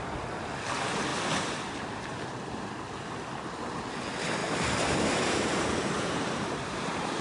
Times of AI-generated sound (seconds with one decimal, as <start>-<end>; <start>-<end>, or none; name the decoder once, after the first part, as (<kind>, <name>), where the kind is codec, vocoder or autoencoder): 4.4-6.8 (vocoder, BigVGAN v2)